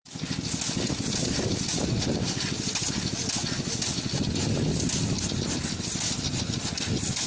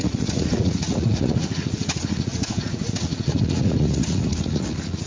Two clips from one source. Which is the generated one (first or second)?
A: second